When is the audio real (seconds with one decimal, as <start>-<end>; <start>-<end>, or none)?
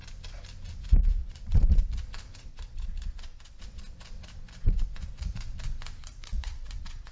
0.0-1.2; 1.9-2.5; 3.6-6.0